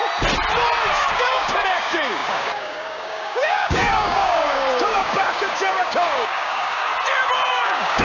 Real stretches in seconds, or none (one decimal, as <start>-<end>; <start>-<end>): 0.0-0.9; 6.9-7.5